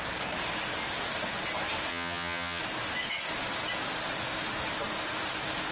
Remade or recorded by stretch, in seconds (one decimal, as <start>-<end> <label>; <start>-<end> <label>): 0.0-1.9 recorded; 1.9-2.6 remade; 2.6-5.7 recorded